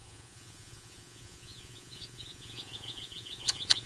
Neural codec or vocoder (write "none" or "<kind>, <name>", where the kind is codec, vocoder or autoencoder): vocoder, Vocos